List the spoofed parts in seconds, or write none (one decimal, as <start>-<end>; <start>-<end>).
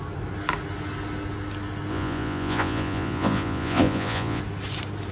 1.9-4.4